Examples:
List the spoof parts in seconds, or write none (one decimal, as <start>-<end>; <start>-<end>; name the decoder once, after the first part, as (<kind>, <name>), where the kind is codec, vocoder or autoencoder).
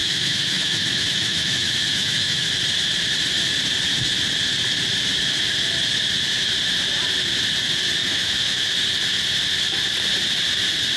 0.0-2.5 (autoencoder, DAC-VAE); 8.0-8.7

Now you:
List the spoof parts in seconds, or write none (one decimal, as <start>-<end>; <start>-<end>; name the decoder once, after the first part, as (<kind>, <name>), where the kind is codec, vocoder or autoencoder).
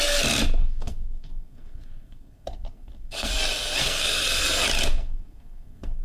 0.6-3.3 (codec, SNAC); 3.8-4.4; 4.9-6.0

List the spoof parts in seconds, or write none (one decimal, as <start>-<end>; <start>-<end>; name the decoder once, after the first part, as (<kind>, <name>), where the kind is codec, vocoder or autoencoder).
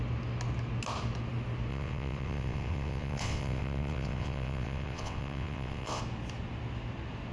1.7-6.0 (vocoder, WaveNeXt)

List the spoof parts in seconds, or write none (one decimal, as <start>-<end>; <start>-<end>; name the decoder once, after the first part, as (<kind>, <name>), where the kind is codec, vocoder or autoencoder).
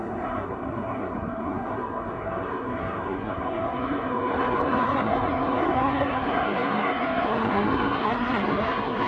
0.0-9.1 (codec, SNAC)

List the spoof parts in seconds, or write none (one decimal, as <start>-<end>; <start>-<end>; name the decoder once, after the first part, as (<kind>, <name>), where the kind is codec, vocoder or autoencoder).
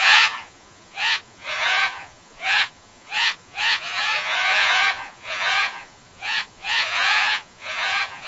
0.0-8.3 (vocoder, Vocos)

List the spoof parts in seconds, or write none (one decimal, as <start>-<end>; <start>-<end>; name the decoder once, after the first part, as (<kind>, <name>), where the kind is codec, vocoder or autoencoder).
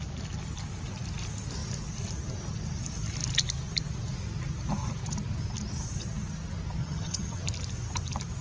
6.8-7.4 (vocoder, HiFi-GAN)